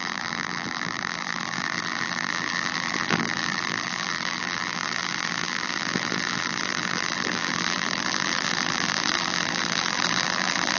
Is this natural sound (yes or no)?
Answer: no